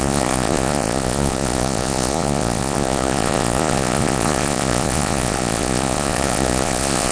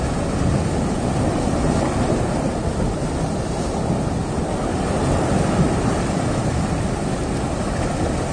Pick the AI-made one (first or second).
first